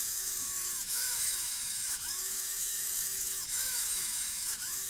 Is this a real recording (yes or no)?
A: no